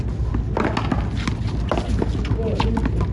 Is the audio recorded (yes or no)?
yes